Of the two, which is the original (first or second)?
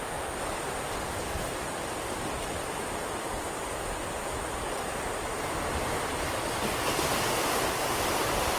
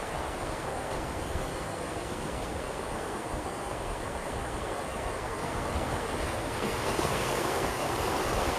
first